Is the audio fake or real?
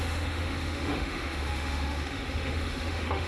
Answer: fake